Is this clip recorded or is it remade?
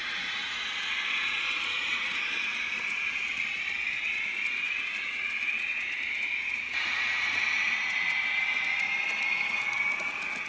remade